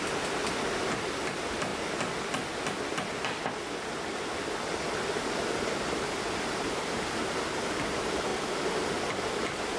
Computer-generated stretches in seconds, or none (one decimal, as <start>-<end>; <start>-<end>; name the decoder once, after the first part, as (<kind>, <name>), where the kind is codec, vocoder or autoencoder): 0.0-1.7 (vocoder, BigVGAN v2); 6.7-8.3; 8.9-9.8